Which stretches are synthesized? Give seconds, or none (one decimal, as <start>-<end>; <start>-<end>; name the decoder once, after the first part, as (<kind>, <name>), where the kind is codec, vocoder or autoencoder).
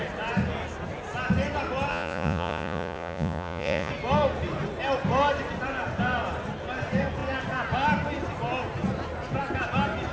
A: 1.9-3.9 (vocoder, Vocos)